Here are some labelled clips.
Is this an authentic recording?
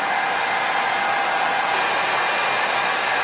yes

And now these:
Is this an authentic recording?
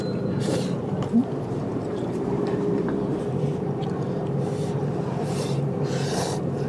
no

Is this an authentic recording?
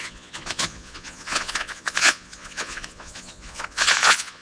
no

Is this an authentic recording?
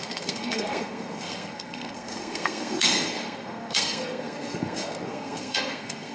no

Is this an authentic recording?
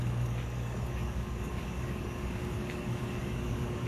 no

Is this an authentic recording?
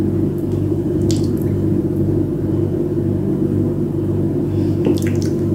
yes